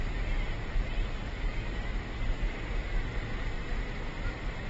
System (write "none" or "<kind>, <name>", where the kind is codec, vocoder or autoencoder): none